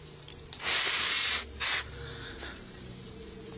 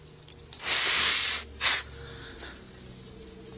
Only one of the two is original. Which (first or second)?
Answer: second